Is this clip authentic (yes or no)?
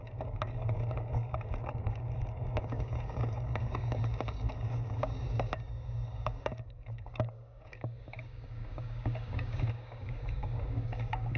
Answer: no